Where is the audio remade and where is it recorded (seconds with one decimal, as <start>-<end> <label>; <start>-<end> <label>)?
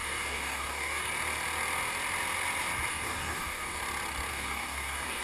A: 0.0-1.1 remade; 1.1-2.9 recorded; 2.9-3.8 remade; 3.8-4.3 recorded; 4.3-5.2 remade